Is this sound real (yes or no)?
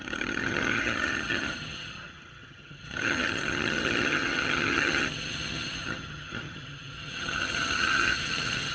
no